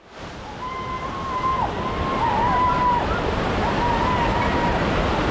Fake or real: real